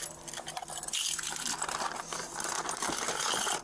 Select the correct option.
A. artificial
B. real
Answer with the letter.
B